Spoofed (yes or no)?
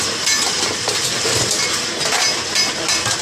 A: no